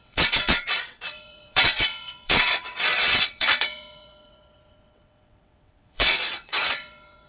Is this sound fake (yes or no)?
yes